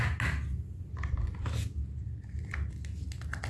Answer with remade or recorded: recorded